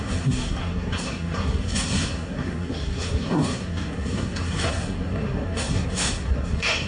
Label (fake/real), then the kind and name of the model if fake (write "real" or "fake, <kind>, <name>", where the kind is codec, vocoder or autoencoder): fake, codec, SNAC